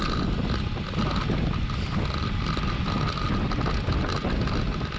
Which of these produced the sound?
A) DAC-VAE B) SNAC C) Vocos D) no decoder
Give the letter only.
D